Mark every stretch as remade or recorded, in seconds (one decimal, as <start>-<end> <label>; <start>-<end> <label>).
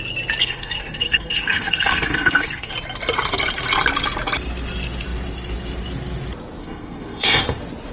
0.0-0.4 recorded; 0.4-2.7 remade; 2.7-6.6 recorded; 6.6-7.4 remade; 7.4-7.9 recorded